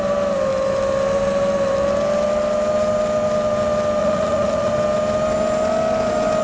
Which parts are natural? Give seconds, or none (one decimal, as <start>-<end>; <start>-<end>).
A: 0.0-4.0; 4.7-6.4